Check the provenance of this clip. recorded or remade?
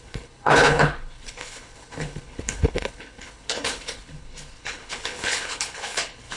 remade